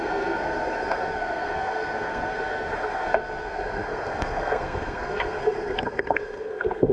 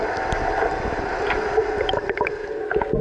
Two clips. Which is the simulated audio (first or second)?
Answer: first